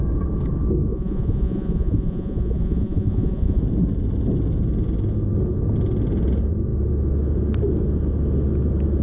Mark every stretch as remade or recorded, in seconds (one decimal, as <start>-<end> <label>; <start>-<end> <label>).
0.0-0.9 recorded; 0.9-3.6 remade; 3.6-9.0 recorded